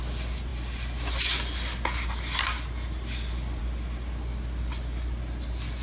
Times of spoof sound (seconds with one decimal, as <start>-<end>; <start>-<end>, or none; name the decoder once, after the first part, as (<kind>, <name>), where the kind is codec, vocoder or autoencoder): none